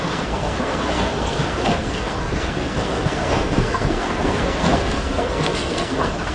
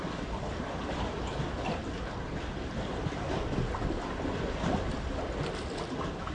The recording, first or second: second